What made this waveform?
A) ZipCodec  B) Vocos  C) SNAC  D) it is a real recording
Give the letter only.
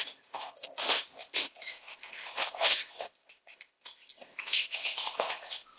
A